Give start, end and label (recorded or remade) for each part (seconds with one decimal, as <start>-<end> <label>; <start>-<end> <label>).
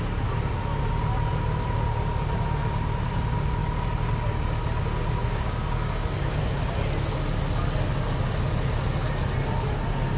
0.0-5.2 recorded; 5.2-6.4 remade; 6.4-10.2 recorded